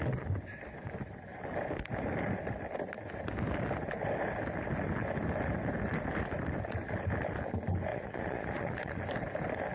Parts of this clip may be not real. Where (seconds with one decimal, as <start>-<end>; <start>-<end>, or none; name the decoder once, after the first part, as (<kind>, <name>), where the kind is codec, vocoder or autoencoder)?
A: 7.9-9.0 (vocoder, Vocos)